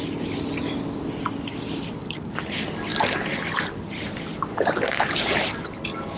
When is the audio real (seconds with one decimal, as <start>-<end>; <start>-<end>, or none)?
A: 0.0-4.5; 5.3-6.2